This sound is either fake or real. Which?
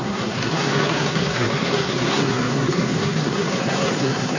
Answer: fake